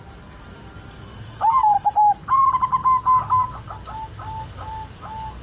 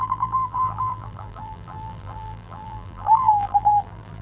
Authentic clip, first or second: first